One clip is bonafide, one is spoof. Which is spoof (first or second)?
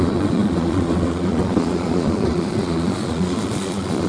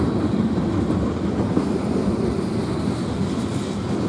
first